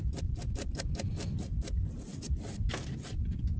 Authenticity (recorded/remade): recorded